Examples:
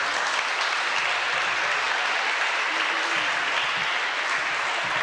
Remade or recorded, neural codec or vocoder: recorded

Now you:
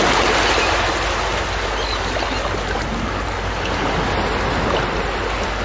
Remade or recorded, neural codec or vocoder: recorded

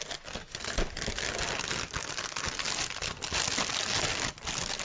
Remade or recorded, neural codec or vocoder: recorded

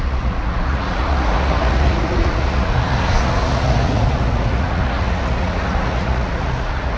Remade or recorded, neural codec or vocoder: remade, vocoder, Vocos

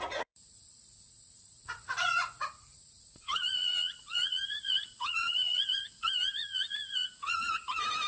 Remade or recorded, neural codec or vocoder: remade, vocoder, Vocos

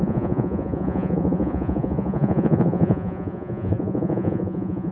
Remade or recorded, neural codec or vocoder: remade, vocoder, Vocos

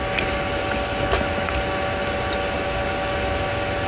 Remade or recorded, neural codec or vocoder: recorded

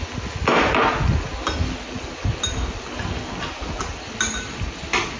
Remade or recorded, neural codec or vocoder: recorded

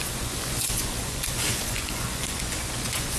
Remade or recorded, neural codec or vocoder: remade, vocoder, Vocos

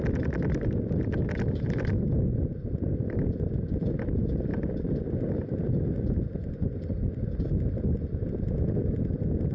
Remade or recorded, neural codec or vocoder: recorded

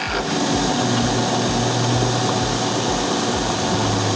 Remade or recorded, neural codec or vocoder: recorded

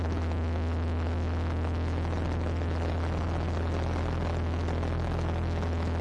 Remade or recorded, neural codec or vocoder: recorded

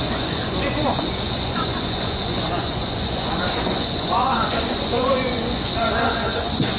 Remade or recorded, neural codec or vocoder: remade, vocoder, Vocos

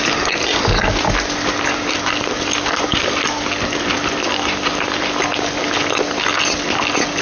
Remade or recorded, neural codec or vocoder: recorded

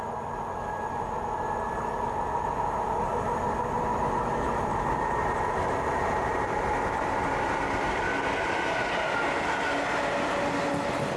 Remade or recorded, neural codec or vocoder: recorded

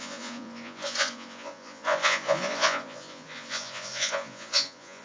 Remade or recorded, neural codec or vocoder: remade, vocoder, Vocos